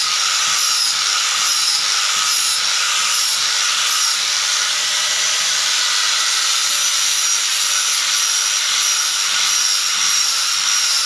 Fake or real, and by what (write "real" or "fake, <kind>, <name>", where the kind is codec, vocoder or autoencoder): real